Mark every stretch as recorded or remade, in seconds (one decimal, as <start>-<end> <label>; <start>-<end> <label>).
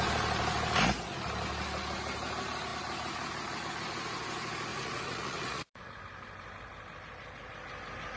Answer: 0.0-4.7 recorded; 4.7-6.0 remade; 6.0-8.2 recorded